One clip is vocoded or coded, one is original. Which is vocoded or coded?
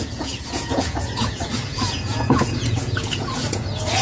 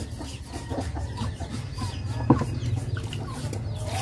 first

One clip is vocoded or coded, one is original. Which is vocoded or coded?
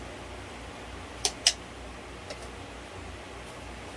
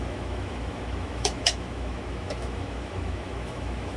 second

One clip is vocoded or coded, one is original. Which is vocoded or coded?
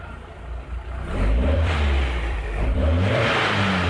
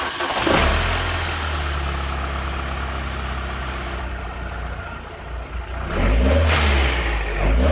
first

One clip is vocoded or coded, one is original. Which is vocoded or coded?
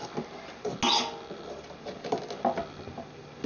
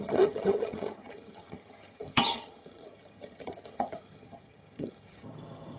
second